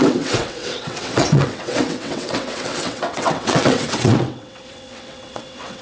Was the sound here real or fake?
fake